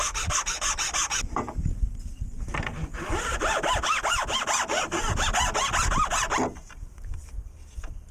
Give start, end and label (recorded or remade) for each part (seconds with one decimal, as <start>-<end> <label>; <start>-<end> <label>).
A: 0.0-8.1 recorded